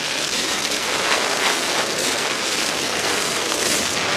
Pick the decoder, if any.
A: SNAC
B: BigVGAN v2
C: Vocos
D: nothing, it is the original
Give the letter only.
A